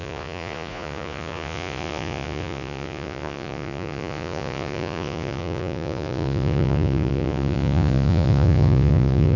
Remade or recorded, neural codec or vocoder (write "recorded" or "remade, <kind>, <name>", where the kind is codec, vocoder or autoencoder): remade, vocoder, Vocos